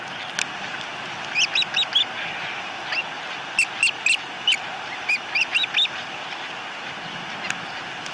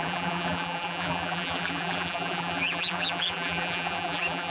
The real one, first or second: first